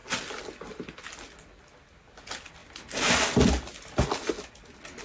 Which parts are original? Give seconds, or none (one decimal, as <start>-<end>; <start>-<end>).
1.0-5.0